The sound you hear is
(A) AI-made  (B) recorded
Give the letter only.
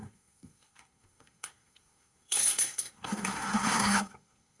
A